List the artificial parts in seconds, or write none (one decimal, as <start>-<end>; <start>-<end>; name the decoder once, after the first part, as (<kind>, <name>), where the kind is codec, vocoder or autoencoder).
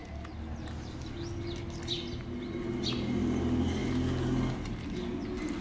none